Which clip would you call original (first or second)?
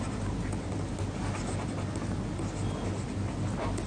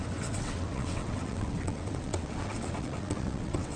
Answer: first